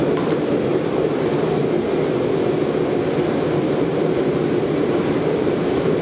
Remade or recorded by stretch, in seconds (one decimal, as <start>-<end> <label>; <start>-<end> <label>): 0.0-1.6 remade; 1.6-3.3 recorded; 3.3-6.0 remade